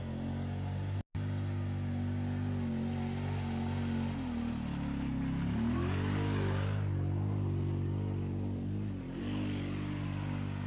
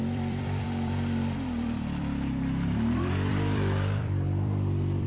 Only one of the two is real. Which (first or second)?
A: first